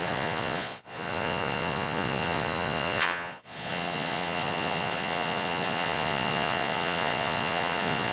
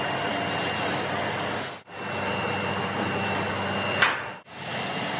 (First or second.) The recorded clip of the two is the second